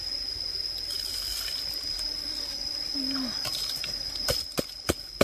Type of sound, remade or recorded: recorded